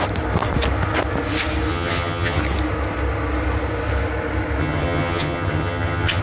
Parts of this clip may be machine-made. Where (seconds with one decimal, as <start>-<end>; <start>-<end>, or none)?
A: 1.7-2.4; 4.6-6.2